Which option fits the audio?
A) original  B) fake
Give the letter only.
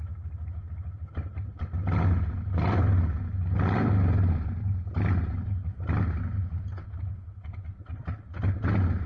A